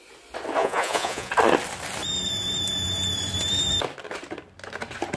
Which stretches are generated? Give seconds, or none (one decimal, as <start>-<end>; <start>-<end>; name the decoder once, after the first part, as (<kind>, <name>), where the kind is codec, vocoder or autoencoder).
0.6-1.3 (vocoder, Vocos)